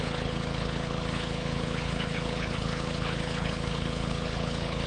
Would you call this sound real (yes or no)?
no